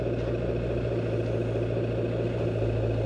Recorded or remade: recorded